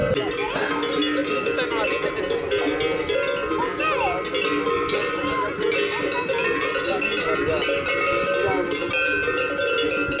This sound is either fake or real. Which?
real